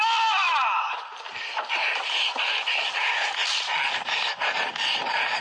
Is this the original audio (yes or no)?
yes